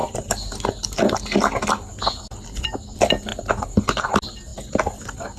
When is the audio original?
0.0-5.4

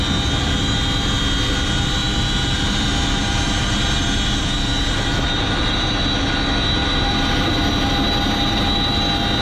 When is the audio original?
0.0-6.8; 7.8-9.4

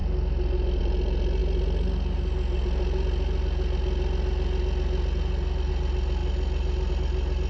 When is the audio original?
0.0-7.5

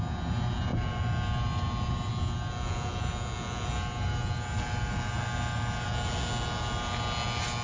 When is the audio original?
0.0-7.6

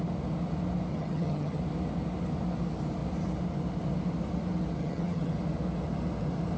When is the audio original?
0.0-0.9; 1.6-4.8; 5.3-6.6